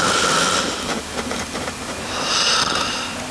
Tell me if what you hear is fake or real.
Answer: real